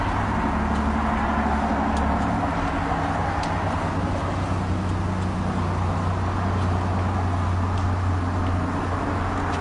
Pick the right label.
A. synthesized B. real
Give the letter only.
B